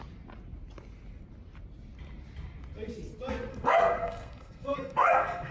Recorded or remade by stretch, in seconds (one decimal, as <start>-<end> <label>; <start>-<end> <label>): 0.0-3.5 recorded; 3.5-5.5 remade